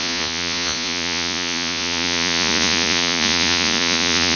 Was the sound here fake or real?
fake